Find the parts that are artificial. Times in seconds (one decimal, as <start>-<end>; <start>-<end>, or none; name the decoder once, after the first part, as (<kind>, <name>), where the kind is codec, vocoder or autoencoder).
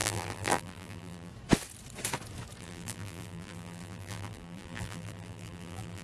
0.0-1.3 (vocoder, BigVGAN v2); 2.6-6.0